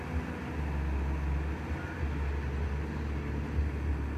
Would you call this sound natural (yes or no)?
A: yes